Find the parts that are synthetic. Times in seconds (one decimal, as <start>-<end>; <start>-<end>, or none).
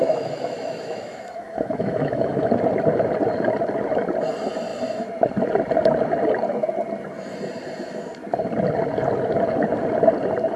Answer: 0.0-2.5